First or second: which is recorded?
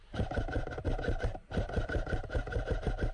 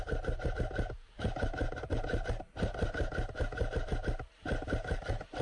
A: second